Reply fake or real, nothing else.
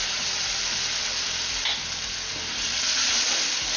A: real